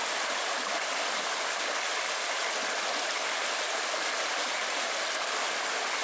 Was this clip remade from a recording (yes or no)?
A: no